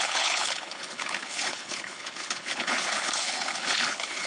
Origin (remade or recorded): remade